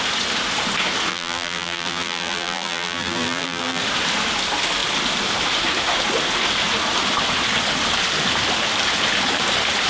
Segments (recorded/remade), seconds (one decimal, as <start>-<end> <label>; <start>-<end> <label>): 0.0-1.1 recorded; 1.1-3.8 remade; 3.8-9.9 recorded